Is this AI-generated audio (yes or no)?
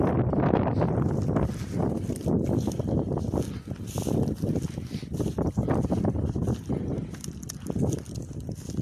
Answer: no